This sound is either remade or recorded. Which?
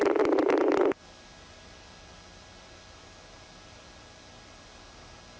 recorded